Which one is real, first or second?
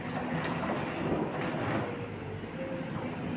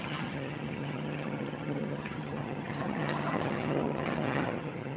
first